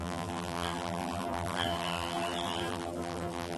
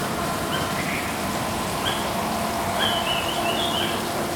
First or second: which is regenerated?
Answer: first